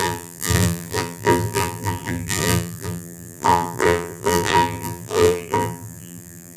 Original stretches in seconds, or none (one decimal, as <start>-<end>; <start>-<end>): none